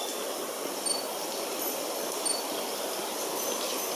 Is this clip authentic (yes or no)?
yes